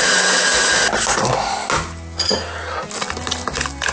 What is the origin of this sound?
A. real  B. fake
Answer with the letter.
A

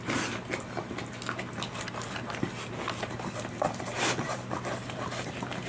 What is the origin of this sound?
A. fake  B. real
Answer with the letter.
B